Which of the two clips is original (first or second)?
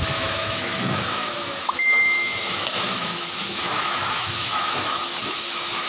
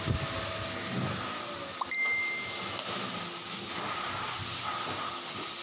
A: second